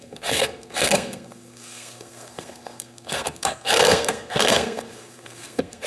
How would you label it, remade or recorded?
remade